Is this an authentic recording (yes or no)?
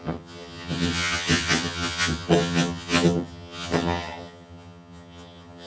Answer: no